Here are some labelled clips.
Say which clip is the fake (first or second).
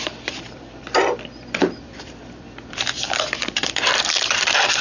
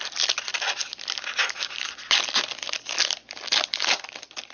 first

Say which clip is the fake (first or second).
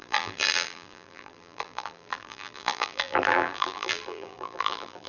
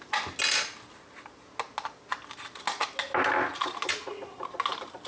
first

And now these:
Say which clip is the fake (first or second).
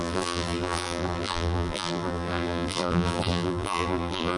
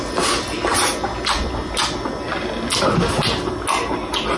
first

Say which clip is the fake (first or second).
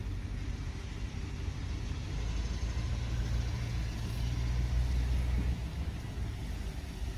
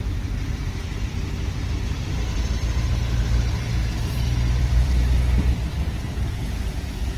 second